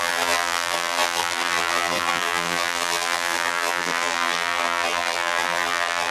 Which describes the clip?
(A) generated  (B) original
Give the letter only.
A